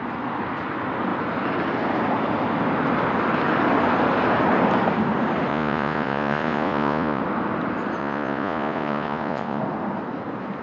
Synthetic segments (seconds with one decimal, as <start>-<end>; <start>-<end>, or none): 5.5-7.2; 8.0-9.6